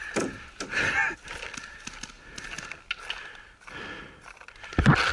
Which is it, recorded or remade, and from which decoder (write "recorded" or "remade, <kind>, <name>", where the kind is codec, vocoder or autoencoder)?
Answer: recorded